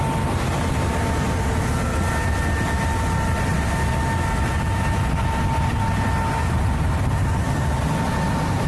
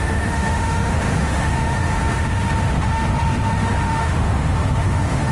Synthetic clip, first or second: second